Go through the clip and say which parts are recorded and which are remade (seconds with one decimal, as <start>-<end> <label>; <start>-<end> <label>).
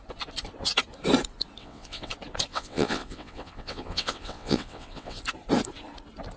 0.0-1.6 recorded; 1.6-2.1 remade; 2.1-2.5 recorded; 2.5-5.2 remade; 5.2-6.4 recorded